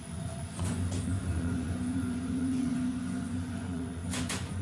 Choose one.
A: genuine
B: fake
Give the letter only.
B